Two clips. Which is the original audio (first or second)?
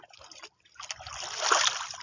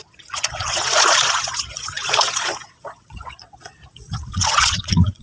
first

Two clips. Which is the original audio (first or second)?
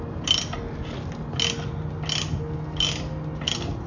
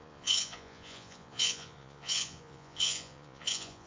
first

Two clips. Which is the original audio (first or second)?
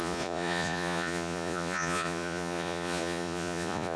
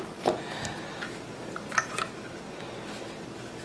second